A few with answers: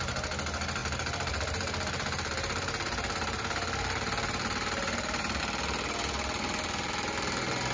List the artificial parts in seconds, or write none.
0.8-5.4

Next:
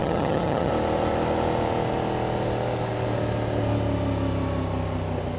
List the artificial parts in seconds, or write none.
0.0-0.7